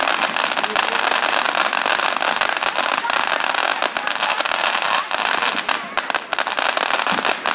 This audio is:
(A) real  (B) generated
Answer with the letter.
A